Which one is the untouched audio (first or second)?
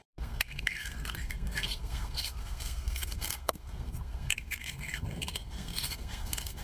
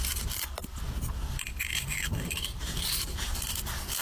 second